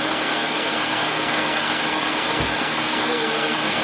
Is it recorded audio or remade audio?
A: remade